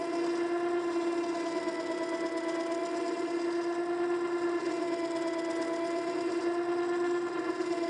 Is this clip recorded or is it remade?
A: recorded